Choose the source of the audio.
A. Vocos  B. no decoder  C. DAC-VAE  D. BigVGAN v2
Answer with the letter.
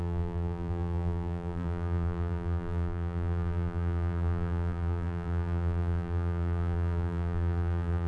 D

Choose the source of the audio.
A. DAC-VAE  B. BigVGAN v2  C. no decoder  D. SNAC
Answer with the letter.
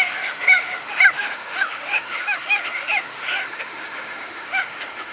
A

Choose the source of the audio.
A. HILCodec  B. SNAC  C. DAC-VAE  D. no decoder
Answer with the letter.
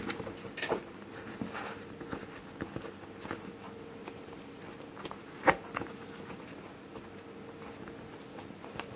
D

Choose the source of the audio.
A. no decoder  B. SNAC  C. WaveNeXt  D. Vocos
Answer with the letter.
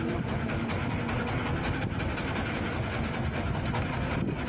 A